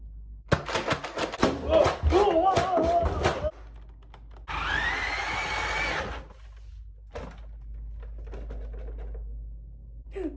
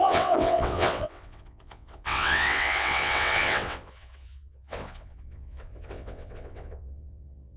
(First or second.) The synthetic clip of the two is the second